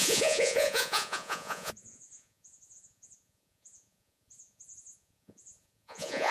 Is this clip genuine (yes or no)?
no